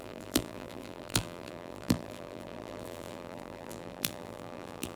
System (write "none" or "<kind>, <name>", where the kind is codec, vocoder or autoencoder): vocoder, BigVGAN v2